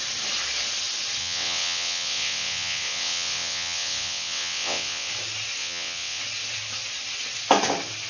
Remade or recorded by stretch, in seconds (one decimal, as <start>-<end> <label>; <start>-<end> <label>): 0.0-1.2 recorded; 1.2-5.1 remade; 5.1-5.6 recorded; 5.6-6.2 remade; 6.2-8.1 recorded